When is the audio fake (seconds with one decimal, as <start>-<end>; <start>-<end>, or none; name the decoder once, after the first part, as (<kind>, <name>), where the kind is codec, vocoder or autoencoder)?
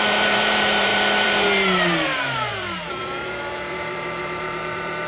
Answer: 0.0-5.1 (vocoder, BigVGAN v2)